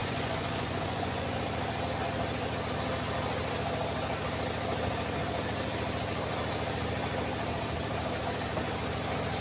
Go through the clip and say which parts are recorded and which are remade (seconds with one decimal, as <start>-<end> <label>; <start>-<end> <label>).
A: 0.0-1.4 remade; 1.4-9.4 recorded